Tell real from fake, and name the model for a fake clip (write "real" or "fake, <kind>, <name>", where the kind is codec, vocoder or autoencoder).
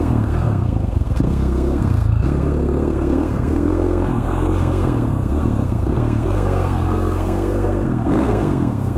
fake, codec, SNAC